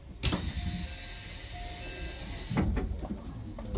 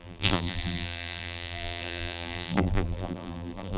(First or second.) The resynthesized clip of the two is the second